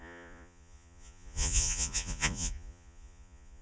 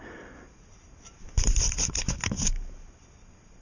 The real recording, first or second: second